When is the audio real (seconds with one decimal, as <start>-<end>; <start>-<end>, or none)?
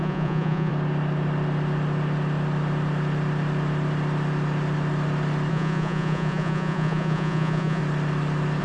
0.7-5.5; 7.8-8.6